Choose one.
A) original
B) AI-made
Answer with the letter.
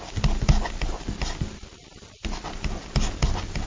A